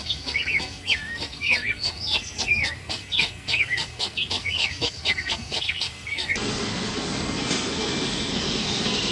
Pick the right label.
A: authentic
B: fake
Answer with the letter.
B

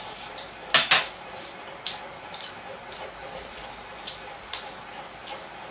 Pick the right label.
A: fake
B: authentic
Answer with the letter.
B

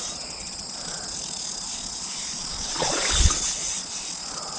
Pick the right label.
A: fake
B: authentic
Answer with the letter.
A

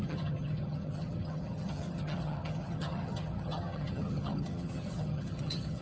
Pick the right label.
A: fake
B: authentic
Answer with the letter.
A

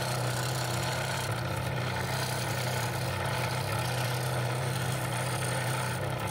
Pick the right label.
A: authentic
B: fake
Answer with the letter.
A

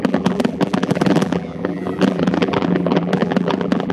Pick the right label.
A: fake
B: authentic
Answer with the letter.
A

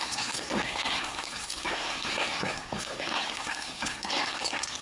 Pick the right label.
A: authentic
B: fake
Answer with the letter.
B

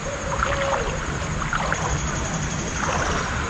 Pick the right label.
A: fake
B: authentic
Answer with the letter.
B